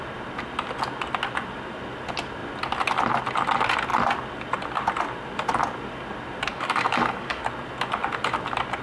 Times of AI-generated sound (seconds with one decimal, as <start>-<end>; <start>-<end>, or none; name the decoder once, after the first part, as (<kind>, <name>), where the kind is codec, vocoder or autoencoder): 6.5-7.5 (codec, DAC)